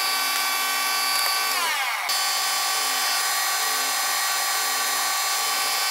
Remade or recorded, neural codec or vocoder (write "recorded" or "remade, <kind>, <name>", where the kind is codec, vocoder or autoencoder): recorded